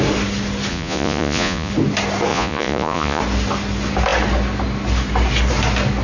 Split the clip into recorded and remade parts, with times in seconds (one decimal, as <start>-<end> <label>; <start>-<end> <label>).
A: 0.0-0.7 recorded; 0.7-1.7 remade; 1.7-2.3 recorded; 2.3-3.2 remade; 3.2-6.0 recorded